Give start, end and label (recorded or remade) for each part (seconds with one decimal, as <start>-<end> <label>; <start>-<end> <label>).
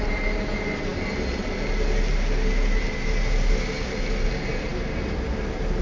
0.0-5.8 recorded